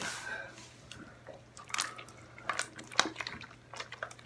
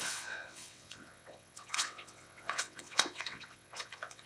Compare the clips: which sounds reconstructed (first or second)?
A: second